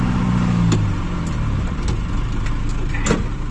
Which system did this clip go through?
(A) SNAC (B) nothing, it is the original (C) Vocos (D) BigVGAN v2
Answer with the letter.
B